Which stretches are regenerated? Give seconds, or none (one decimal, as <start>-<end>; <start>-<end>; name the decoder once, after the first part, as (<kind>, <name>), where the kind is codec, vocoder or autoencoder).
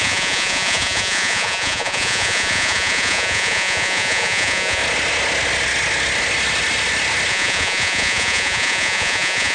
0.0-4.8 (vocoder, Vocos); 7.3-9.5